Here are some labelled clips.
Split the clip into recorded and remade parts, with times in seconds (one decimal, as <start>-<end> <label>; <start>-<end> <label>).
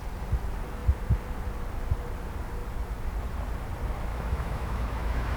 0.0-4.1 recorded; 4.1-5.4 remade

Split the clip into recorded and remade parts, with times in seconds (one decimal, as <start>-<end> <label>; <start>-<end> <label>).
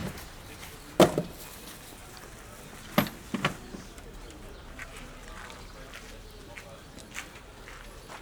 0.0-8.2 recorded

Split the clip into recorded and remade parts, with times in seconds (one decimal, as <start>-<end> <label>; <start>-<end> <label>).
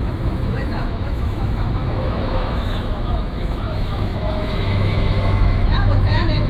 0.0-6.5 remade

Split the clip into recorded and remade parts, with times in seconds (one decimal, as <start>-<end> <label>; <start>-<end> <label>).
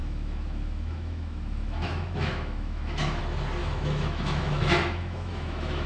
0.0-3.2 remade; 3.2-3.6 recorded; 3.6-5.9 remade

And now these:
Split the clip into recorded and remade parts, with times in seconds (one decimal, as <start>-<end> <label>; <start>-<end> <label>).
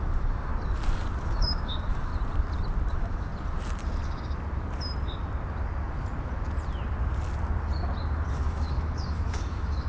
0.0-0.5 remade; 0.5-1.2 recorded; 1.2-2.1 remade; 2.1-2.9 recorded; 2.9-3.3 remade; 3.3-8.3 recorded; 8.3-9.9 remade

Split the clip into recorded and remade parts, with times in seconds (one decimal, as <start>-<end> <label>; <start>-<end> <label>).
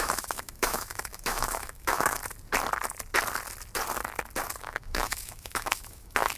0.0-2.2 remade; 2.2-4.6 recorded; 4.6-6.4 remade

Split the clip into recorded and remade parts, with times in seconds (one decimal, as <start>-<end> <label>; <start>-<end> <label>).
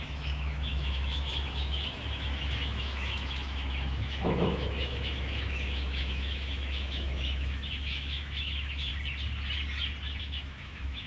0.0-8.9 remade; 8.9-10.2 recorded; 10.2-11.1 remade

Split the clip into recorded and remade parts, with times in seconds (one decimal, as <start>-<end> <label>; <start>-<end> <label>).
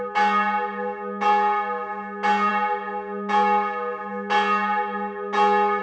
0.0-5.8 recorded